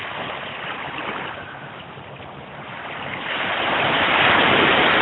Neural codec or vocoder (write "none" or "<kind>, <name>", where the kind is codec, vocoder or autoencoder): none